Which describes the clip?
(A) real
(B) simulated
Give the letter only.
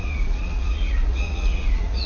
B